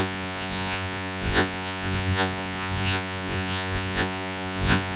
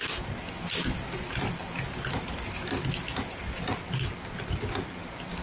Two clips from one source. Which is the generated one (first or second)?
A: first